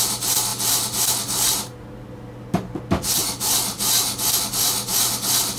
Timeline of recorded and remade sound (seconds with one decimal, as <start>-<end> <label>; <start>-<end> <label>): 0.0-5.6 recorded